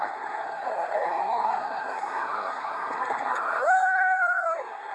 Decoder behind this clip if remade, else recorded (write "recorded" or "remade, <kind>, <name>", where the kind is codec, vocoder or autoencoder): remade, codec, SNAC